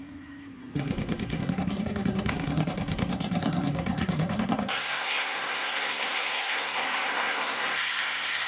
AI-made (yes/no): yes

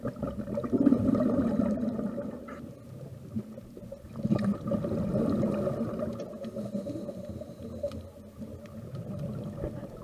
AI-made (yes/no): no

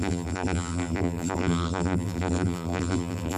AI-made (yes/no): yes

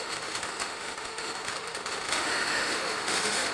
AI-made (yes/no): yes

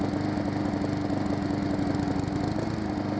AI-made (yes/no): no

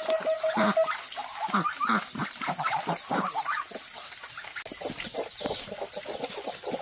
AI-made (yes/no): no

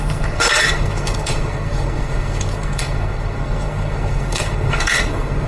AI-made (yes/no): yes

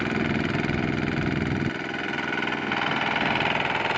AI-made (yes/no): no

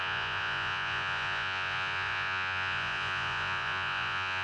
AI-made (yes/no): yes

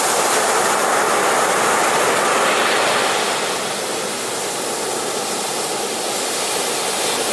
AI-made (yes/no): no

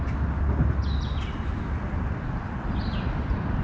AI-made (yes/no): no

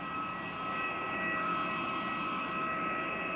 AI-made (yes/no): no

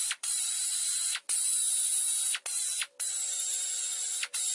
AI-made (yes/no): no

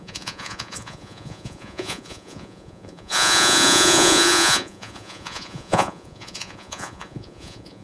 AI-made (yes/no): yes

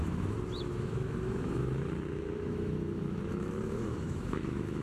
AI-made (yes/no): yes